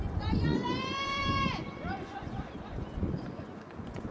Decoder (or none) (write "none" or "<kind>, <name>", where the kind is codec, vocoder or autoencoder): vocoder, Vocos